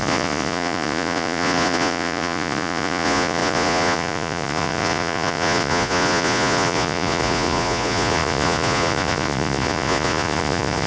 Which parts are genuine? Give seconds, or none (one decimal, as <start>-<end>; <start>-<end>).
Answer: none